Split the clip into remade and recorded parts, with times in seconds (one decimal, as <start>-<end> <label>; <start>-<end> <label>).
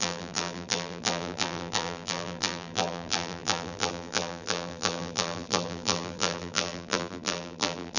0.0-8.0 remade